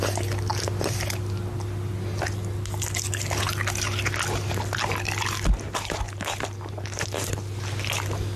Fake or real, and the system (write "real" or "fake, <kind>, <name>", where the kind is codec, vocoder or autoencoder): real